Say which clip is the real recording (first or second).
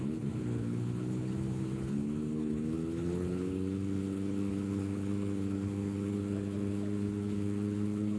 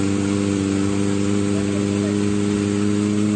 second